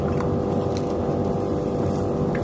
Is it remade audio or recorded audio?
recorded